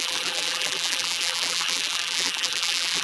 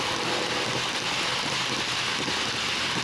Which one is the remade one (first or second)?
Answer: first